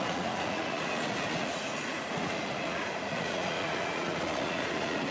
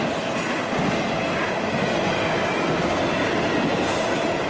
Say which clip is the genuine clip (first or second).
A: second